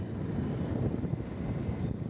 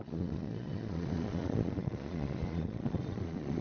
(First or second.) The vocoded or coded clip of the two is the second